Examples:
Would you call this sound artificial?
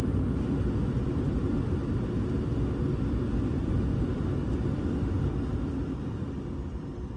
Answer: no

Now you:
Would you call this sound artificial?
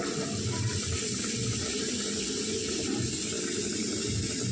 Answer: no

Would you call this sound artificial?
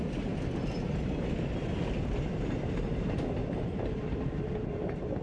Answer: no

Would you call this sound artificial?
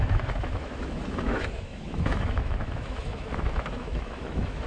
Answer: yes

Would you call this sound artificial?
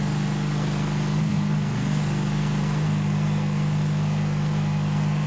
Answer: yes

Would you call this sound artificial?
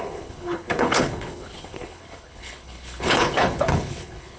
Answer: yes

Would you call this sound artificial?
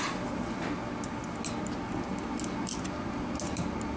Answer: no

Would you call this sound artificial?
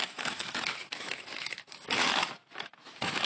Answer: yes